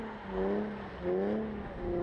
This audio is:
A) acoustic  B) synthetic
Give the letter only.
A